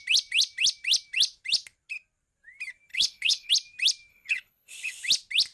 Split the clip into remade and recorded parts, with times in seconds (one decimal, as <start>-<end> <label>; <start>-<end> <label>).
0.0-2.9 recorded; 2.9-3.5 remade; 3.5-4.1 recorded; 4.1-5.0 remade; 5.0-5.5 recorded